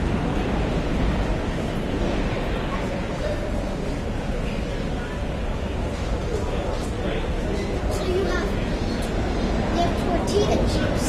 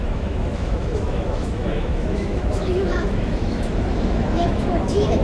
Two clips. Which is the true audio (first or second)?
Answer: first